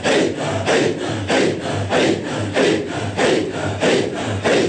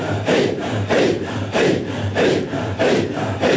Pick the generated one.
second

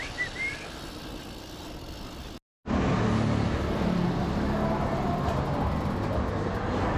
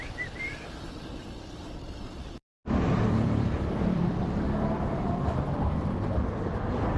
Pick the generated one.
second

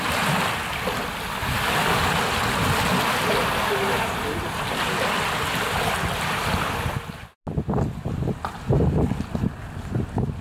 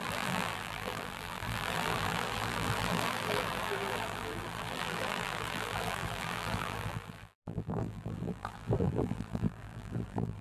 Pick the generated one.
second